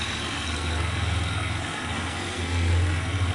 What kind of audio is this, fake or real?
fake